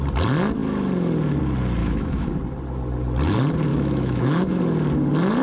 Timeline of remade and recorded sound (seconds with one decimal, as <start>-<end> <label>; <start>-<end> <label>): 0.0-1.8 recorded; 1.8-2.3 remade; 2.3-3.7 recorded; 3.7-4.6 remade; 4.6-5.4 recorded